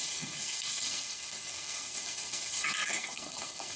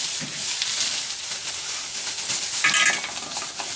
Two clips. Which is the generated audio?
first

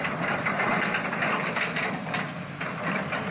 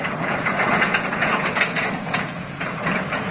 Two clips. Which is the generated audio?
second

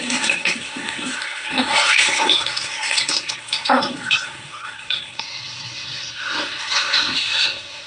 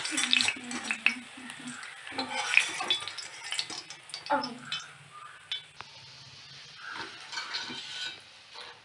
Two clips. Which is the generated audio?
first